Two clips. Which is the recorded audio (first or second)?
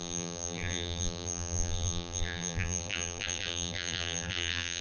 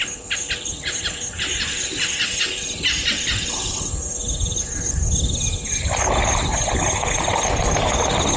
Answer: second